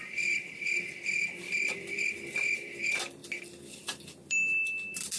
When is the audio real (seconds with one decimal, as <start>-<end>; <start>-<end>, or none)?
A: 0.0-5.2